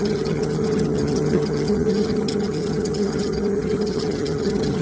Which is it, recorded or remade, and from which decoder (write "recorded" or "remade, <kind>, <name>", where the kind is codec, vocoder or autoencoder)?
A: remade, vocoder, HiFi-GAN